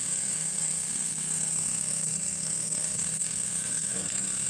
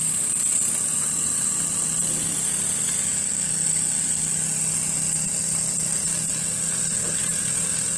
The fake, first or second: first